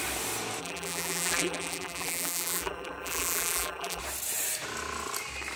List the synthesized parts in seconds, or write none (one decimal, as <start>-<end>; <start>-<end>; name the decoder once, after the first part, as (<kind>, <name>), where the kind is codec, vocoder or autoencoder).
0.6-4.0 (vocoder, BigVGAN v2)

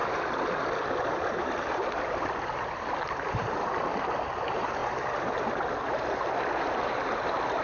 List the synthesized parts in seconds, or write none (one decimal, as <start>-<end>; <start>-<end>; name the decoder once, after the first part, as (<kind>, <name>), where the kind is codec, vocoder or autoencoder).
0.0-4.8 (vocoder, BigVGAN v2); 7.1-7.6

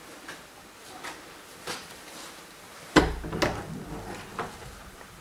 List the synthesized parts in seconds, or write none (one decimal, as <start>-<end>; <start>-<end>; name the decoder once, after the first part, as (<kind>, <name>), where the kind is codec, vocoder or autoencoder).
0.0-3.0 (vocoder, BigVGAN v2)

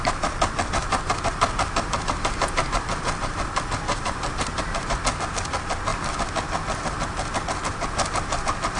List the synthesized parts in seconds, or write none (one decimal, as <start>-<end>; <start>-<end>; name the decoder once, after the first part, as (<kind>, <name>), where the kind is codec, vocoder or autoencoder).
0.8-4.6 (vocoder, BigVGAN v2)

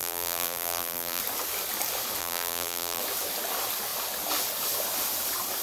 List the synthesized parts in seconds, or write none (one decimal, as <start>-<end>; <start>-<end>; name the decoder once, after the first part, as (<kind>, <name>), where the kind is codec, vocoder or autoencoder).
0.0-1.2 (vocoder, BigVGAN v2); 2.2-3.0

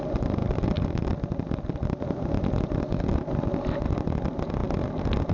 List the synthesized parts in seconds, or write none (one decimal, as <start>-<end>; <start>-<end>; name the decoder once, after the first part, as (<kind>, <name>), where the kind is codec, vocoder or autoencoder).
none

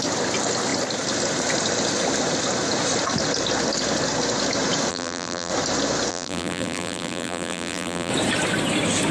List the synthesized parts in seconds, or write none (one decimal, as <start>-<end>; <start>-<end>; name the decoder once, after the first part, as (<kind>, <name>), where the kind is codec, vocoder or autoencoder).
4.9-5.5 (vocoder, BigVGAN v2); 6.1-8.1